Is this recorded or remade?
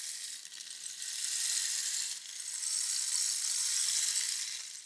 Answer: recorded